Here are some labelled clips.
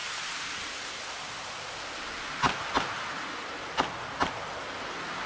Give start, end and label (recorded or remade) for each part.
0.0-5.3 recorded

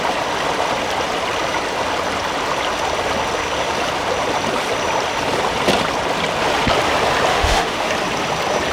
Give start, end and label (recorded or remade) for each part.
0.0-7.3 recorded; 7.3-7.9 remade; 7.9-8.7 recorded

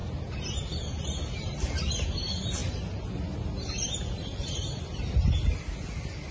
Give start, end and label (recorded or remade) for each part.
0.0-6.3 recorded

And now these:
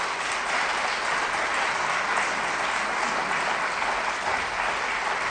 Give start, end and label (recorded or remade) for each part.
0.0-5.3 recorded

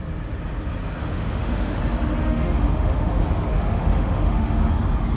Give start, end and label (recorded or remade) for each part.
0.0-1.0 recorded; 1.0-1.8 remade; 1.8-2.2 recorded; 2.2-3.1 remade; 3.1-3.5 recorded; 3.5-4.7 remade; 4.7-5.2 recorded

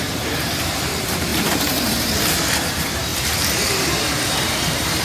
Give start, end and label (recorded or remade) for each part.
0.0-5.0 remade